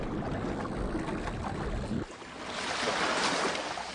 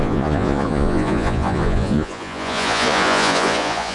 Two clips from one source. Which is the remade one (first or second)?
second